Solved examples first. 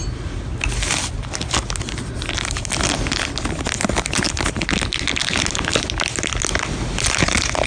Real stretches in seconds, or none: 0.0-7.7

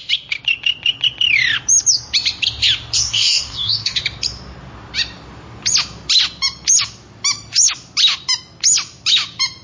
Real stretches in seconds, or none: 0.0-3.0; 4.0-9.6

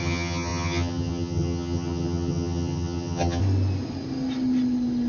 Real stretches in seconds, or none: 3.4-5.1

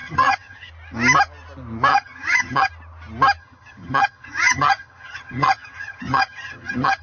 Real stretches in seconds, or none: 0.7-1.9; 2.7-3.4

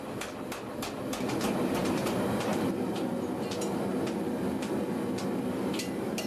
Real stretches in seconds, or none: 0.0-6.3

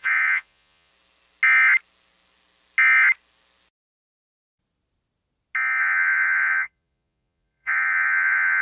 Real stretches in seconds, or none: 0.9-5.8

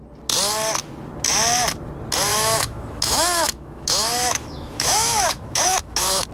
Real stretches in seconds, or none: 0.0-2.3